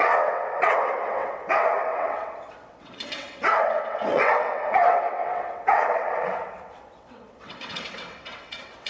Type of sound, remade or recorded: remade